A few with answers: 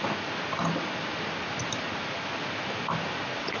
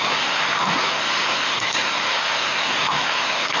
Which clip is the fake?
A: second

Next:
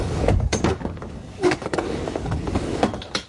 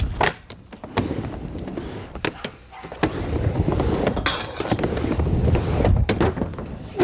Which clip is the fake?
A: first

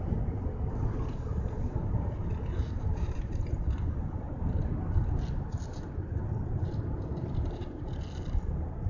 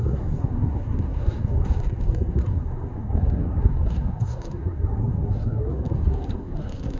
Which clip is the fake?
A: second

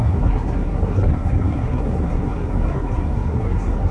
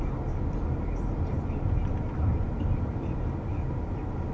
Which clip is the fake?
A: first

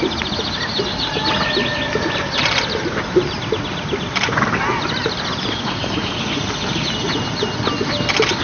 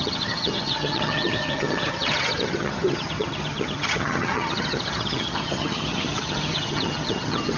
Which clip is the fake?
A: second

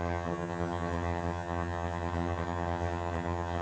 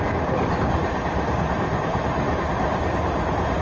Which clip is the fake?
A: first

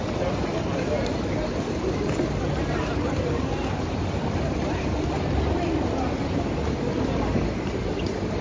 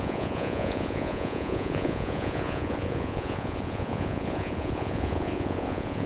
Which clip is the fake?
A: second